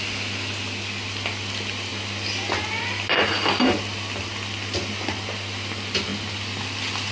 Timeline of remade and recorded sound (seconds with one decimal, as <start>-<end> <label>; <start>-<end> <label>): 0.0-7.1 recorded